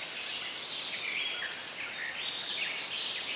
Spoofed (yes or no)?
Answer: no